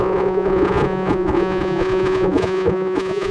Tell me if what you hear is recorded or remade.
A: remade